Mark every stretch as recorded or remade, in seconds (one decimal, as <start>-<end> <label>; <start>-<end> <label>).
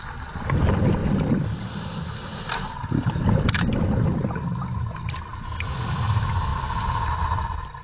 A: 0.0-4.1 remade; 4.1-5.4 recorded; 5.4-7.8 remade